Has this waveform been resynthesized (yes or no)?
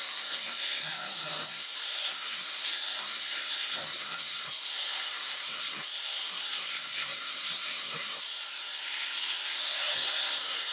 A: yes